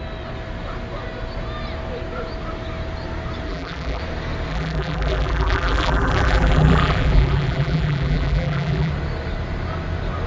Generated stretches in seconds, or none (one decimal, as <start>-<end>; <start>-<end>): 3.5-4.0; 4.5-8.9